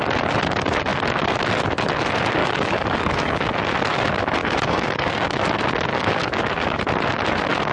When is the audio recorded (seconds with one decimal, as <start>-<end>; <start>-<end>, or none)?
0.0-2.4; 3.5-4.4; 5.4-5.9; 6.8-7.7